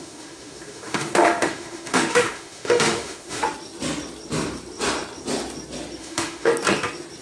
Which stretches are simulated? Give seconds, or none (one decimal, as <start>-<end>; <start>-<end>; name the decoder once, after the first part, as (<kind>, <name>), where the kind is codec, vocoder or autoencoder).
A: 0.0-3.4 (autoencoder, DAC-VAE); 6.0-6.5